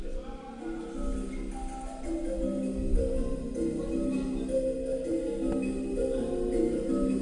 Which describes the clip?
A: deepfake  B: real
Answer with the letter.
B